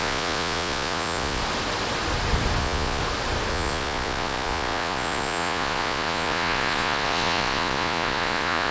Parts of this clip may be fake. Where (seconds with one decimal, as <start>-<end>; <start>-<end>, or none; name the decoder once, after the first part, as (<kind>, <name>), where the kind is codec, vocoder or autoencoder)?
0.0-1.4 (vocoder, Vocos); 2.6-3.0; 3.5-8.7